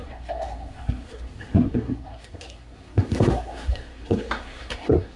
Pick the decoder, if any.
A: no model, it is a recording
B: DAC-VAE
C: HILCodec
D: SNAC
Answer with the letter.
D